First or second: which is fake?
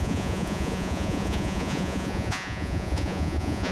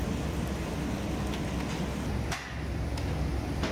first